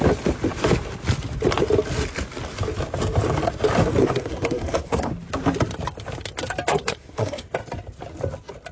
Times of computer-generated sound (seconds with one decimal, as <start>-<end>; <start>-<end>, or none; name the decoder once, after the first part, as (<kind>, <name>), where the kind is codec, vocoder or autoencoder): 4.0-5.1 (codec, SNAC); 6.7-7.4

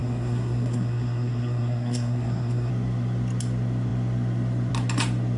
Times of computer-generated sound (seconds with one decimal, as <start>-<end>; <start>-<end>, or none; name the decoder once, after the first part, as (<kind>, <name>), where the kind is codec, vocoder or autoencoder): 0.0-2.7 (codec, SNAC)

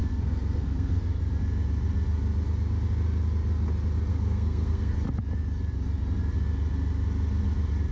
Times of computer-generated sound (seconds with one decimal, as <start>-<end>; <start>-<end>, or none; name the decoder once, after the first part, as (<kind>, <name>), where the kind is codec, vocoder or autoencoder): 0.0-1.2 (codec, SNAC); 4.1-4.9

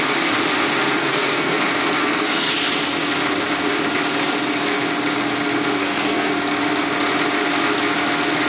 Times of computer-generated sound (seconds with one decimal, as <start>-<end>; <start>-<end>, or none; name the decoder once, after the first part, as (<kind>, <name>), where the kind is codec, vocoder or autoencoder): 1.0-1.6 (codec, SNAC); 2.0-2.5; 5.8-6.3